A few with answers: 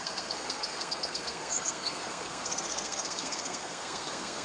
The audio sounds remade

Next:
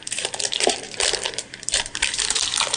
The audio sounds recorded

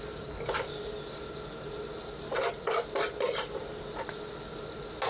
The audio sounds recorded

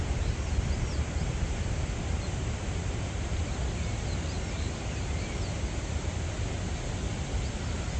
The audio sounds recorded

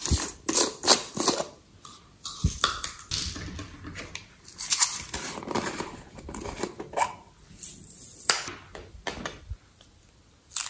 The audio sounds recorded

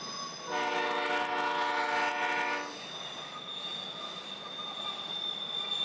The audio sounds recorded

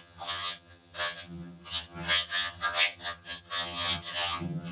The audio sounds remade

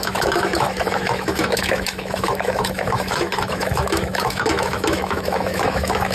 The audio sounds remade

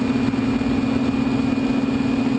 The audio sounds recorded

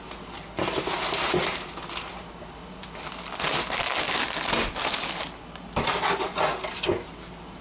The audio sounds recorded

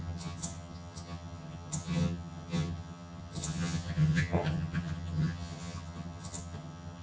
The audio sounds remade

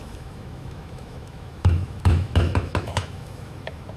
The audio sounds remade